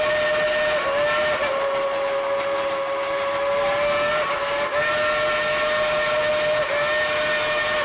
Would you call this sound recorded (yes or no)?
yes